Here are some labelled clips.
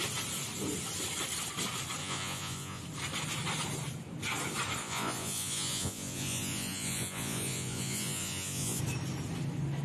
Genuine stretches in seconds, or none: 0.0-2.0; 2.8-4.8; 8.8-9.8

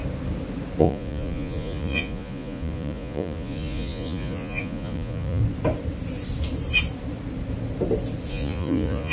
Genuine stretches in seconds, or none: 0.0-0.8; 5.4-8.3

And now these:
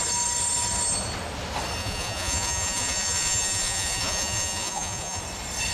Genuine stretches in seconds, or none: 0.0-1.8; 5.2-5.7

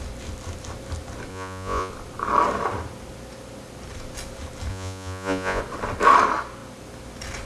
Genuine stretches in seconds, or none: 0.0-1.3; 1.9-4.7; 5.6-7.5